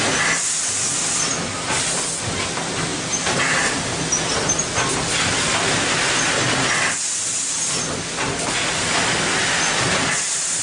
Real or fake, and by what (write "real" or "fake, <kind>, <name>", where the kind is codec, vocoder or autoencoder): real